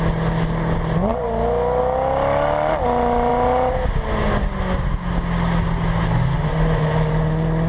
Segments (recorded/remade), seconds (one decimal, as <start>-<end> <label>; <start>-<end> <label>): 0.0-7.7 recorded